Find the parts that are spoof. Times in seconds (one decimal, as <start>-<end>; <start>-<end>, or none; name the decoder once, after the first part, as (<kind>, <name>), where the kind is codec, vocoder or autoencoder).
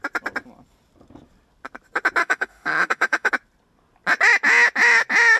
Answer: 2.2-3.3 (autoencoder, DAC-VAE)